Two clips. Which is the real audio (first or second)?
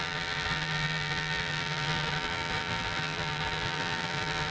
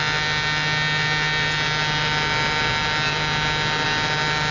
second